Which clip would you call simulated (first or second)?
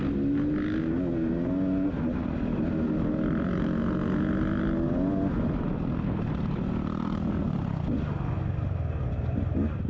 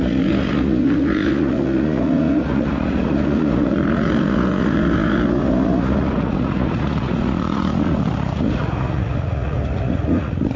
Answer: second